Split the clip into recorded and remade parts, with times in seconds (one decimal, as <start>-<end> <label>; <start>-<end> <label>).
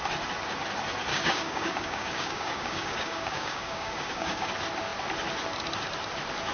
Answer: 0.0-1.1 recorded; 1.1-4.5 remade; 4.5-6.5 recorded